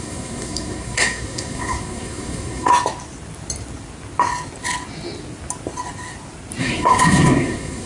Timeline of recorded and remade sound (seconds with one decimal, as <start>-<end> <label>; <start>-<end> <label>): 0.0-2.7 remade; 2.7-6.6 recorded; 6.6-7.9 remade